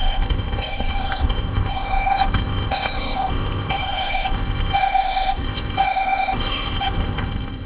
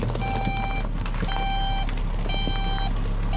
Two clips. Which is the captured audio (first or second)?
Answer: second